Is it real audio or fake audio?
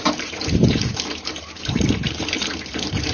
fake